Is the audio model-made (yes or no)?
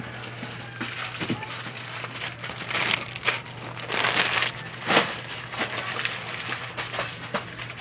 no